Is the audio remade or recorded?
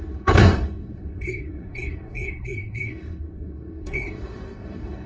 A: remade